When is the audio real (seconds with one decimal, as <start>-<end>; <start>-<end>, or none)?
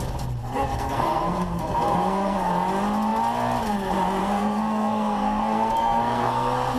0.0-0.4; 2.5-4.2